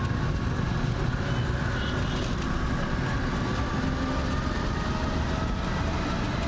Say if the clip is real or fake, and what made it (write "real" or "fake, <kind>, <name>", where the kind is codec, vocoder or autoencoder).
real